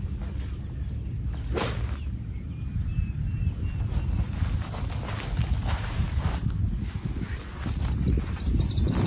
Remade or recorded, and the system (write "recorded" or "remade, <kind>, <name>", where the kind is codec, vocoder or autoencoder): recorded